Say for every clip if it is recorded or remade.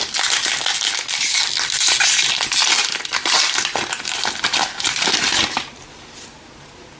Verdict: recorded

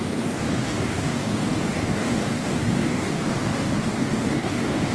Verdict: remade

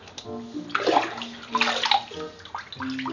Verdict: recorded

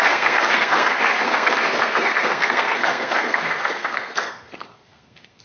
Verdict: remade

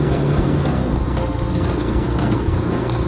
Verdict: remade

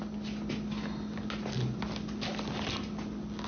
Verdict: recorded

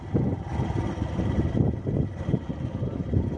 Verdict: recorded